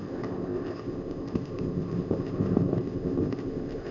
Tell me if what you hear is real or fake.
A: fake